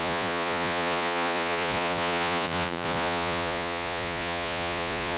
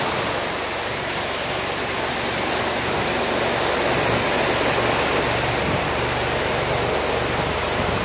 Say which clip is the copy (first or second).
first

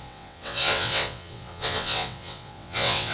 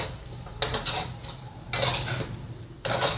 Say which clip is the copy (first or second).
first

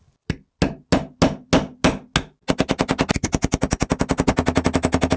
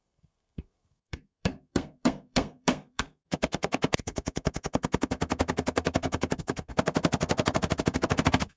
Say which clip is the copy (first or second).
second